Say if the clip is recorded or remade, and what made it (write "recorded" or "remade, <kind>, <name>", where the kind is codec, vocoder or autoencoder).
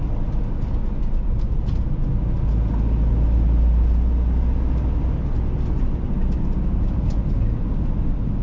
recorded